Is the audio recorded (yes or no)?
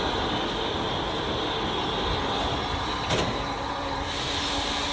yes